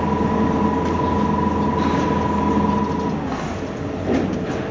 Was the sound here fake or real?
real